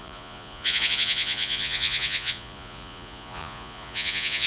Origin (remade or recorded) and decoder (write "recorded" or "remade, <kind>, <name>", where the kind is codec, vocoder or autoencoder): remade, vocoder, Vocos